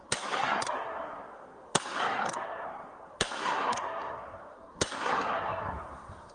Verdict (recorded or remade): remade